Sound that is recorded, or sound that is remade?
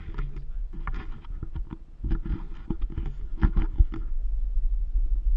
recorded